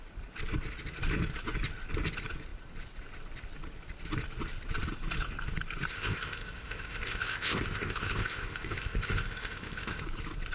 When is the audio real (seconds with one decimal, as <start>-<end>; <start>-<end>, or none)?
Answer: 0.0-5.9; 10.0-10.5